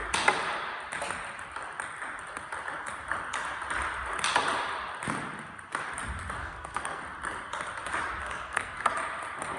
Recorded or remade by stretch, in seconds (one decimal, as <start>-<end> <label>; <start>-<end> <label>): 0.0-6.4 recorded; 6.4-7.0 remade; 7.0-8.2 recorded; 8.2-8.9 remade; 8.9-9.6 recorded